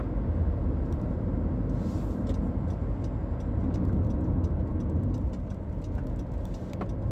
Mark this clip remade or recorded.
recorded